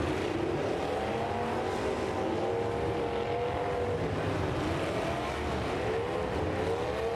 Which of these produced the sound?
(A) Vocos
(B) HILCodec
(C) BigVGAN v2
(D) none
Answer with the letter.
D